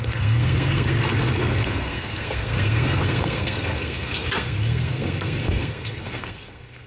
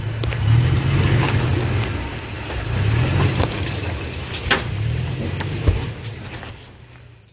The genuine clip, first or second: second